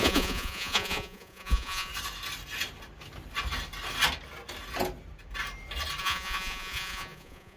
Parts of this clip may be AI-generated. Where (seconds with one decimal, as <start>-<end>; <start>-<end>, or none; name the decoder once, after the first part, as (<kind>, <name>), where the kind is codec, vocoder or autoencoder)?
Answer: 0.0-1.9 (vocoder, Vocos); 6.0-7.6